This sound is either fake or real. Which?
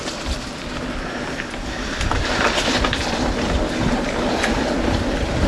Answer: fake